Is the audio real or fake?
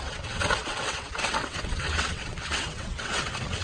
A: fake